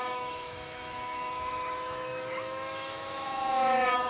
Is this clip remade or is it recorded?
remade